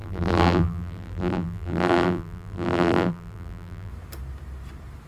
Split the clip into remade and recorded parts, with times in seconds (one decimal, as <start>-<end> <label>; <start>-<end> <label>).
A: 0.0-3.9 remade; 3.9-5.1 recorded